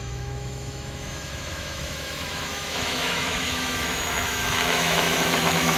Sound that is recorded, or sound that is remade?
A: remade